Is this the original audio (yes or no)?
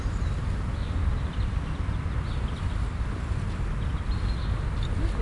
yes